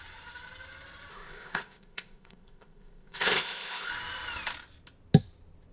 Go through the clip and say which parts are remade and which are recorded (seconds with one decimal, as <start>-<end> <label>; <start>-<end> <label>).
0.0-1.1 recorded; 1.1-3.9 remade; 3.9-5.7 recorded